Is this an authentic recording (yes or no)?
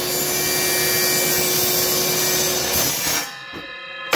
yes